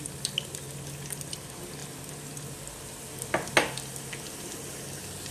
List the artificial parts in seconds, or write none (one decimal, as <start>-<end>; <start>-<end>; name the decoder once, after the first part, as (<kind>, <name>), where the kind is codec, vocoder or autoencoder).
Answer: none